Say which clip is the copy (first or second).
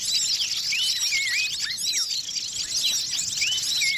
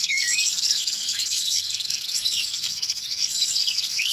second